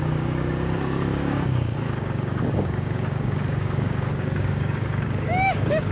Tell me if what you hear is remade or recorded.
remade